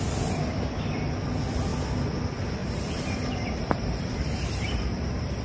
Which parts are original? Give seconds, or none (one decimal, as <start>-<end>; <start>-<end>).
0.0-2.6